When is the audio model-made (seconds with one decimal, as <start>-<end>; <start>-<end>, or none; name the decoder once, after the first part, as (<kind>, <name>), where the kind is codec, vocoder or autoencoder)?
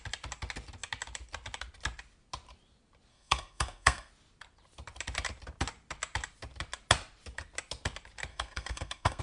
3.1-4.1 (codec, SNAC); 8.3-9.2